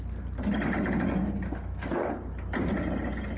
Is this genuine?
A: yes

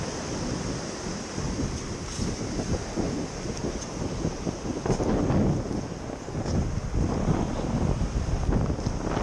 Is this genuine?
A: yes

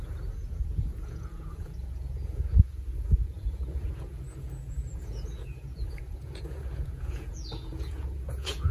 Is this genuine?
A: no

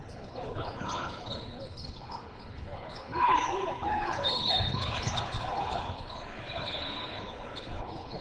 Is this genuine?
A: no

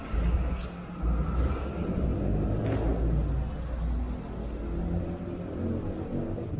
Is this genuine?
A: yes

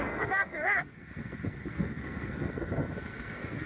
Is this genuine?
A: no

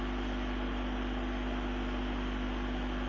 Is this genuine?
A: yes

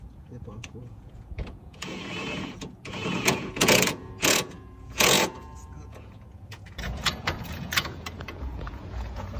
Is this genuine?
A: no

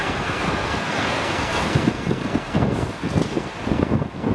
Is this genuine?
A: no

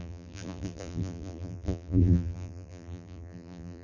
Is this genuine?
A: no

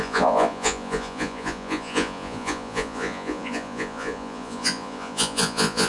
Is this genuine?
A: no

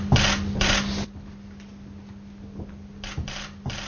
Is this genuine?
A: yes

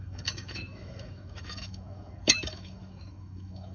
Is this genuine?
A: no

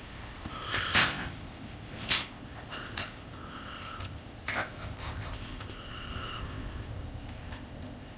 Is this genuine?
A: no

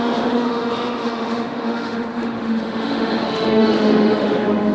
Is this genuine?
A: no